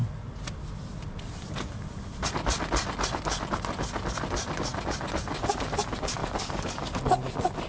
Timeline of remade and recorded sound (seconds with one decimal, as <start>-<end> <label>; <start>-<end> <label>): 0.0-6.2 recorded; 6.2-7.3 remade; 7.3-7.7 recorded